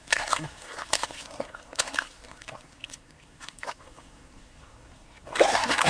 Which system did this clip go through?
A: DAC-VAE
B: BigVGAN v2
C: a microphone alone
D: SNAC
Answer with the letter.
D